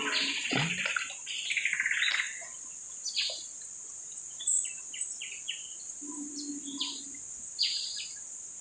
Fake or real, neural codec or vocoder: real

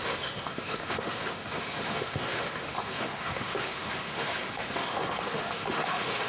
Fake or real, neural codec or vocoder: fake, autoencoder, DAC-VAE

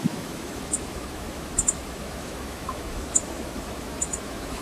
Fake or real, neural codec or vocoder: fake, autoencoder, DAC-VAE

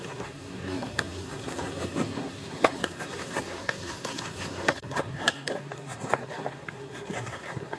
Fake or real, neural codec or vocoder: fake, codec, SNAC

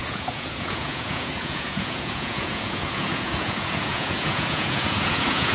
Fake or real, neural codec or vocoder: fake, vocoder, Vocos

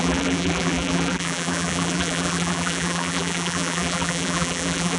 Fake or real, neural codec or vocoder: fake, vocoder, BigVGAN v2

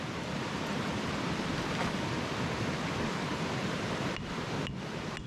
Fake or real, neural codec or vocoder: real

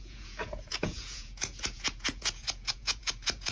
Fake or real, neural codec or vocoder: fake, vocoder, Vocos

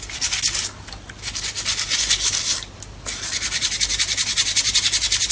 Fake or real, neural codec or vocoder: real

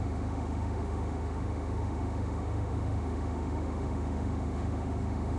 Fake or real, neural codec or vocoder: fake, autoencoder, DAC-VAE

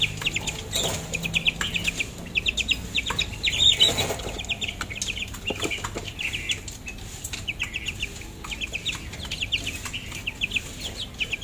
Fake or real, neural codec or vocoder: real